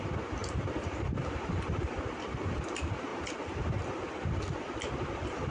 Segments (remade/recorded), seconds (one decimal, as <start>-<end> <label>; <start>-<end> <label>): 0.0-0.4 recorded; 0.4-2.6 remade; 2.6-3.1 recorded; 3.1-4.6 remade; 4.6-5.5 recorded